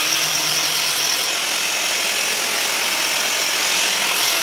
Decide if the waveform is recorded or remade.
recorded